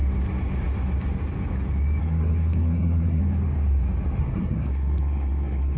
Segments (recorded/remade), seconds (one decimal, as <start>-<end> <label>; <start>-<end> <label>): 0.0-2.0 recorded; 2.0-3.2 remade; 3.2-4.2 recorded; 4.2-5.8 remade